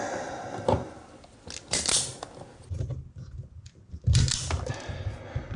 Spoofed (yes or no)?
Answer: no